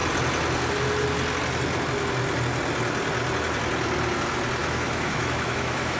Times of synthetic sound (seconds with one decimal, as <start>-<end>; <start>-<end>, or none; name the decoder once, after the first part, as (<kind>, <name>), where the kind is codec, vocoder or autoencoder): 4.6-6.0 (autoencoder, DAC-VAE)